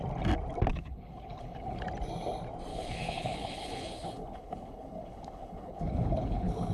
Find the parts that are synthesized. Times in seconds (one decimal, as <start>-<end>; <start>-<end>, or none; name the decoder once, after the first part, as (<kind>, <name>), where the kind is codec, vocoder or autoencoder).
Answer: 0.7-1.8 (codec, HILCodec); 2.7-6.7